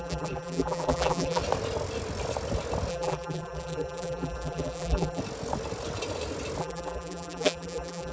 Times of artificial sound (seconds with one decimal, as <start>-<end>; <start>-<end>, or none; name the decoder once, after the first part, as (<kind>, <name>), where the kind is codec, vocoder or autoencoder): 0.0-1.4 (vocoder, BigVGAN v2); 2.9-5.2; 6.6-8.1